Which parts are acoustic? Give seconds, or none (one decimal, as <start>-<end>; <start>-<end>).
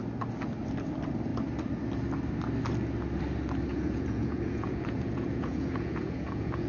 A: 0.0-3.7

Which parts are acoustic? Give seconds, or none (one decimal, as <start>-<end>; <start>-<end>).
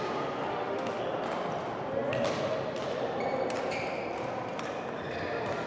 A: 0.0-0.5; 1.0-5.7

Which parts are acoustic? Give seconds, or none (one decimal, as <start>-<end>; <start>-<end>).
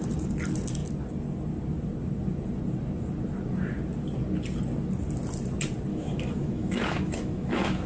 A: 0.0-5.9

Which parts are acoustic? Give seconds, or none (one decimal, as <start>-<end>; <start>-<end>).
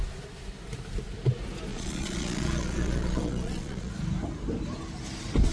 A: 0.0-1.7; 3.9-5.5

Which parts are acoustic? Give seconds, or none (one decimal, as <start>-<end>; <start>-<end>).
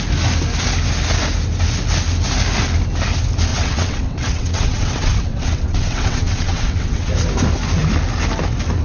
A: 0.0-3.5; 7.1-8.8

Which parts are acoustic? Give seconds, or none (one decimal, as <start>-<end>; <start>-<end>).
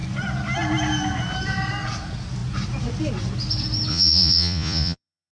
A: 0.0-3.9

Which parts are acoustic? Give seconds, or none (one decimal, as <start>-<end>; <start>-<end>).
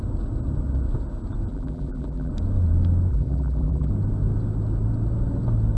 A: 0.0-1.5; 2.3-3.1; 3.9-5.8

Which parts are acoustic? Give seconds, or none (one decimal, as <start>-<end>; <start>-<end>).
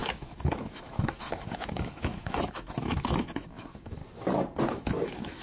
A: 4.0-4.7